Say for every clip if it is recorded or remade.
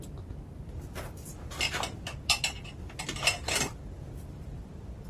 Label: recorded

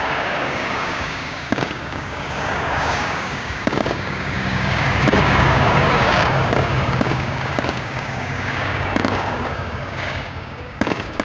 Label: remade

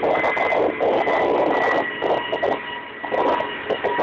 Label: recorded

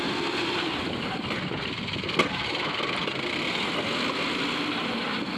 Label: recorded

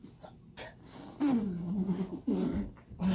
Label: recorded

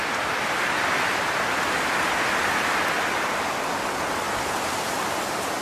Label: recorded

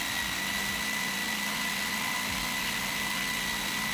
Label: recorded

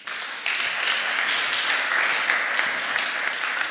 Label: recorded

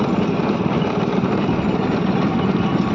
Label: remade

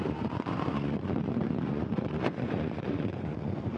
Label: remade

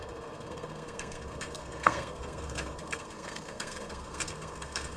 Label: remade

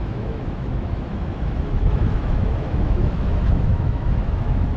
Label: remade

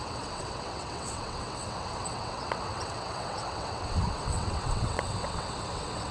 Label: remade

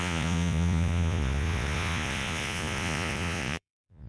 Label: remade